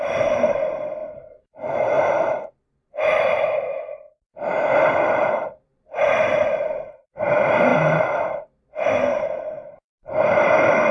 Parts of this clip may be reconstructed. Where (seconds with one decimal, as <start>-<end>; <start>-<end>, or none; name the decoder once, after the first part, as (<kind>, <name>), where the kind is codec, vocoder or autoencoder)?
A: 0.0-10.9 (vocoder, BigVGAN v2)